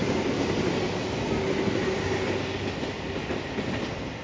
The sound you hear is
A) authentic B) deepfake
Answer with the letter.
A